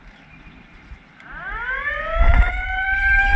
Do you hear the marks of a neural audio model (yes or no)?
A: yes